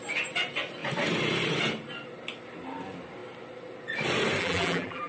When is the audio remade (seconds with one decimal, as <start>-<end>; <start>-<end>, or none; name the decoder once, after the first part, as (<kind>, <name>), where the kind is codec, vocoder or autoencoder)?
4.4-5.1 (vocoder, BigVGAN v2)